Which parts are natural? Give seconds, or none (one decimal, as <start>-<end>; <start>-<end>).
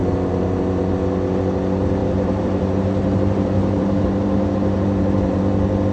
0.9-2.0; 5.4-5.9